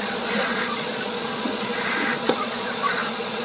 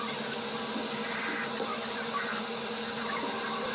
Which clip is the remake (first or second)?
first